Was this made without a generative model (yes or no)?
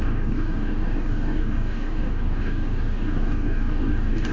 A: no